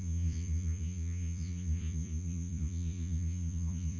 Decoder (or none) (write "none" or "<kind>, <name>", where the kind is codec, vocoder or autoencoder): vocoder, Vocos